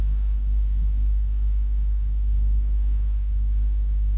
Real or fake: fake